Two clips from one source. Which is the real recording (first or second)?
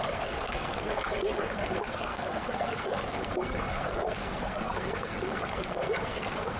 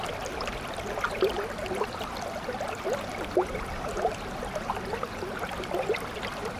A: second